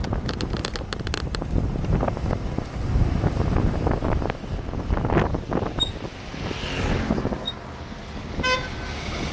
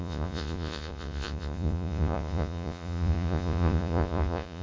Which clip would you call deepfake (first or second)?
second